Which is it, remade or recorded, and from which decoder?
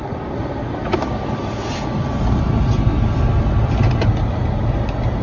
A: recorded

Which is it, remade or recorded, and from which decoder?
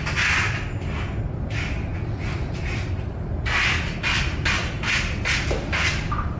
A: recorded